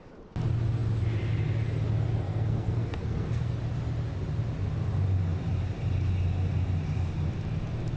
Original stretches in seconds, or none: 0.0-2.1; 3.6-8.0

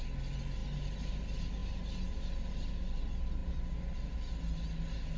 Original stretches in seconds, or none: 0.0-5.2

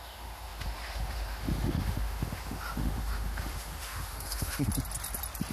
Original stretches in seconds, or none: 4.7-5.5

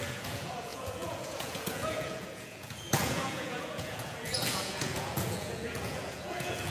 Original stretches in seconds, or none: none